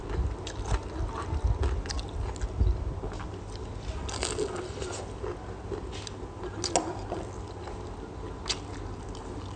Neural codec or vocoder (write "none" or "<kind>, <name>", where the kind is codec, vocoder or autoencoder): none